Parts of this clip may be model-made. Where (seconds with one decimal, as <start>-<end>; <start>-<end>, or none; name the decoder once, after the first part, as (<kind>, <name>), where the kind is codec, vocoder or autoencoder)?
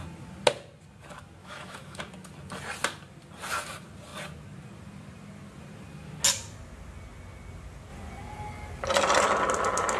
1.4-2.0 (autoencoder, DAC-VAE)